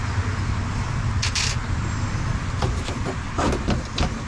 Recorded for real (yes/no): yes